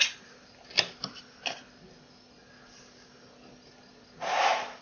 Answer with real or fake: real